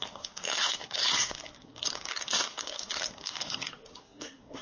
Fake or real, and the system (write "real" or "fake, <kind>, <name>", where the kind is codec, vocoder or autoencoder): fake, codec, SNAC